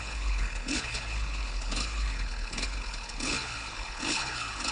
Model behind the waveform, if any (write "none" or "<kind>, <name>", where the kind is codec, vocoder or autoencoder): codec, HILCodec